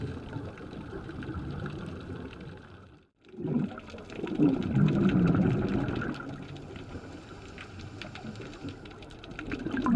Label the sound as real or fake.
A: real